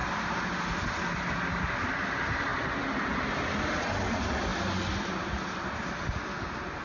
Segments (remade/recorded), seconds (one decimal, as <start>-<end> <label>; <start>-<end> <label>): 0.0-0.6 remade; 0.6-6.8 recorded